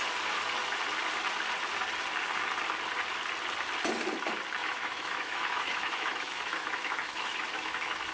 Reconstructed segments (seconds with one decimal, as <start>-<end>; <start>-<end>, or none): 4.6-8.1